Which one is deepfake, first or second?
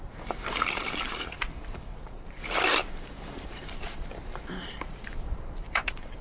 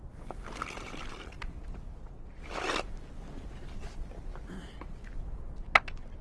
first